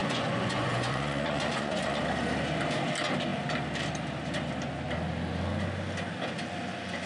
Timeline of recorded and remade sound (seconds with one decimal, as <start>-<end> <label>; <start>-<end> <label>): 0.0-2.0 remade; 2.0-7.1 recorded